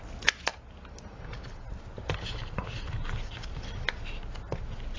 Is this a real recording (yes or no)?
yes